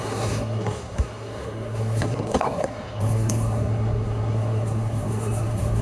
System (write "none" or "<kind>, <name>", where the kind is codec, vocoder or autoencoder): codec, SNAC